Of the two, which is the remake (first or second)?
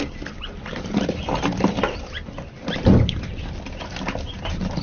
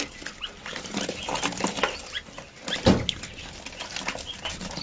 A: first